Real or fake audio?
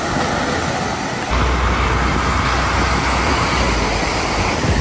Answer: real